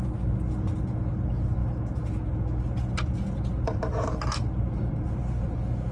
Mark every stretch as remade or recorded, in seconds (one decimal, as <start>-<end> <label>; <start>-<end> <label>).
0.0-5.9 recorded